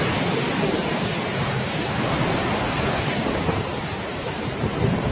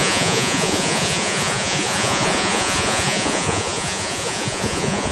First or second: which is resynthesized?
second